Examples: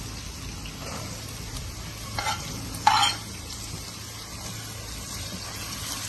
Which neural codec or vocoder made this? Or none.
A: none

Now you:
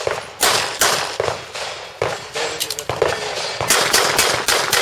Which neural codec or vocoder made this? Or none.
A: none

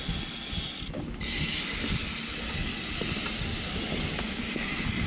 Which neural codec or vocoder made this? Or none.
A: none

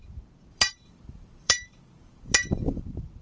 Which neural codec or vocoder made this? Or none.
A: vocoder, BigVGAN v2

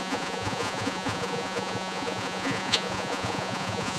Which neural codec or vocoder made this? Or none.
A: vocoder, Vocos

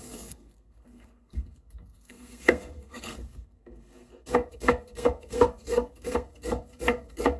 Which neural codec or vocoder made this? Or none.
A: codec, SNAC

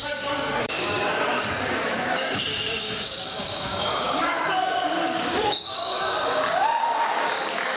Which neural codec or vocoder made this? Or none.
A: codec, DAC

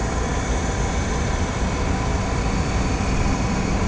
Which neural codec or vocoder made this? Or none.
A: vocoder, BigVGAN v2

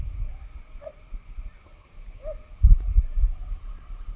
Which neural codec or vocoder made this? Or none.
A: vocoder, BigVGAN v2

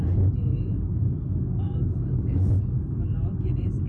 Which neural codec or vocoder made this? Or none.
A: codec, DAC